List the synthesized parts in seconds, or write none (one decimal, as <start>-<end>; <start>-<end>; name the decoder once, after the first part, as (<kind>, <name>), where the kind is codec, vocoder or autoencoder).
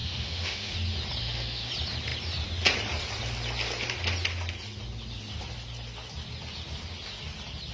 0.0-0.7 (autoencoder, DAC-VAE); 1.2-1.7